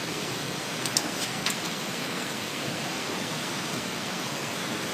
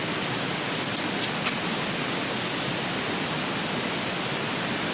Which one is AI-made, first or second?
first